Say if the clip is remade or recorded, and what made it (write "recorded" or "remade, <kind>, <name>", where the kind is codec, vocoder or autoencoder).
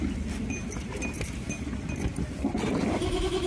recorded